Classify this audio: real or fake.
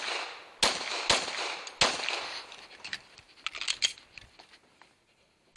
real